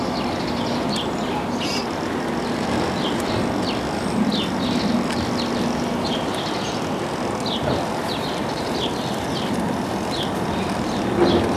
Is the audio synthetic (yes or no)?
no